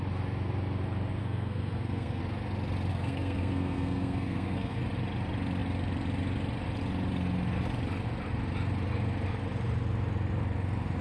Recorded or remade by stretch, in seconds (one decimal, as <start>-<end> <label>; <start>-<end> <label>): 0.0-1.2 recorded; 1.2-2.2 remade; 2.2-2.9 recorded; 2.9-4.8 remade; 4.8-11.0 recorded